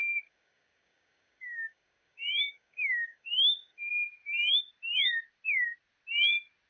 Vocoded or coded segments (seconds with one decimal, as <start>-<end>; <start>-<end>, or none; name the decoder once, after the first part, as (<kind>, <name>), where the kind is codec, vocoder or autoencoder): 0.0-3.9 (codec, DAC)